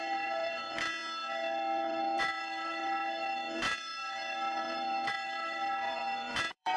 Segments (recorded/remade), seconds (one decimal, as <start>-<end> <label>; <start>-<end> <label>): 0.0-0.9 remade; 0.9-2.2 recorded; 2.2-6.8 remade